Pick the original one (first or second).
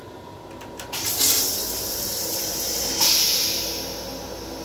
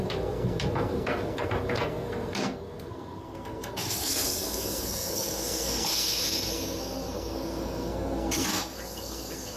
first